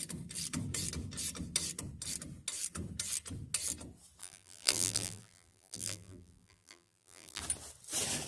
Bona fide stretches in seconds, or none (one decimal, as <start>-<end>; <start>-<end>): 0.0-4.2; 7.4-8.3